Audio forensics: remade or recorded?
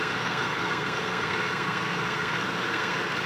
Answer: remade